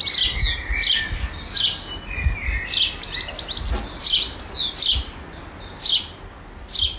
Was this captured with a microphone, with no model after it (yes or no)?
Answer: yes